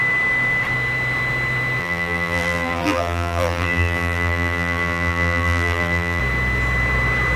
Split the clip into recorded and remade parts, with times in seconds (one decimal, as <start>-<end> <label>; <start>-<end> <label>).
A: 0.0-1.8 recorded; 1.8-6.2 remade; 6.2-7.4 recorded